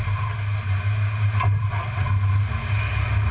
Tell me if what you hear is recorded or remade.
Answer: recorded